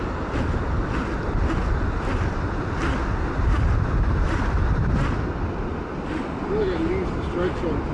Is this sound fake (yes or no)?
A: no